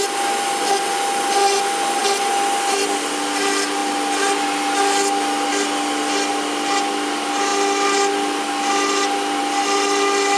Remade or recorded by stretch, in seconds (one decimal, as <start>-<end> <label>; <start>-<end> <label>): 0.0-10.4 recorded